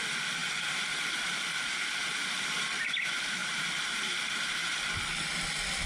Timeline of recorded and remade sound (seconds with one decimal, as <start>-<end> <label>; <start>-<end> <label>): 0.0-0.4 recorded; 0.4-1.8 remade; 1.8-2.2 recorded; 2.2-2.8 remade; 2.8-3.4 recorded; 3.4-4.5 remade; 4.5-5.9 recorded